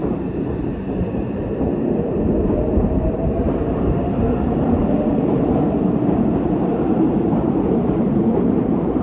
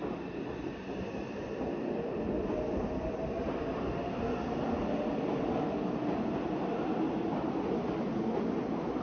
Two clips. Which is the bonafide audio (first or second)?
second